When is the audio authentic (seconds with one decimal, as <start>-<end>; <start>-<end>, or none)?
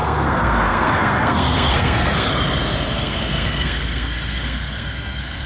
2.3-2.9